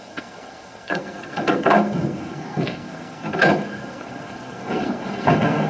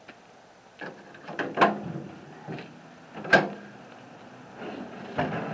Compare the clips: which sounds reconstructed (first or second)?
first